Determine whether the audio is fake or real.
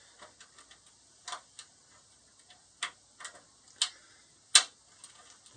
real